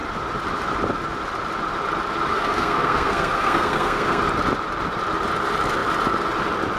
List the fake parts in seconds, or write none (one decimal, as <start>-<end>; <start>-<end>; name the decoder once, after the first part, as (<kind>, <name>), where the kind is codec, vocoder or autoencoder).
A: 2.3-4.2 (codec, SNAC)